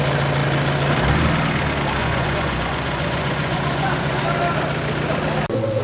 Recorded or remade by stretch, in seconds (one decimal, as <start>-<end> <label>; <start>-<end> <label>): 0.0-2.0 recorded; 2.0-4.2 remade; 4.2-5.8 recorded